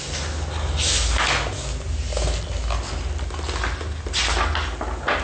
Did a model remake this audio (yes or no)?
no